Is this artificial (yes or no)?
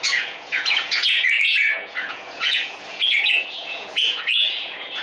yes